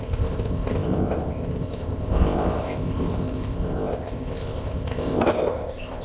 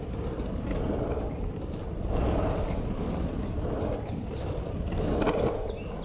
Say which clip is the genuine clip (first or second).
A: second